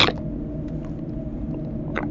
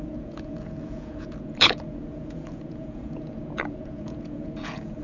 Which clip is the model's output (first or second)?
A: second